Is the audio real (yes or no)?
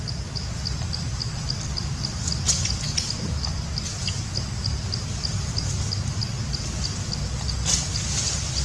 yes